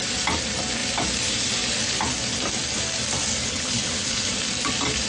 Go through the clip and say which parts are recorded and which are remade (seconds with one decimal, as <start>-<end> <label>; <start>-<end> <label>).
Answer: 0.0-3.4 recorded; 3.4-4.3 remade; 4.3-5.1 recorded